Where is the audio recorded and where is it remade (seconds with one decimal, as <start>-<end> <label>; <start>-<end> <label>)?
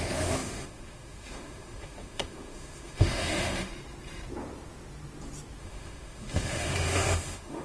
0.0-3.7 remade; 3.7-5.6 recorded; 5.6-7.6 remade